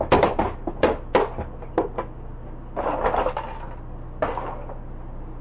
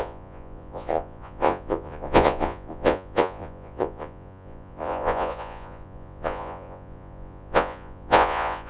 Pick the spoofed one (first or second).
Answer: second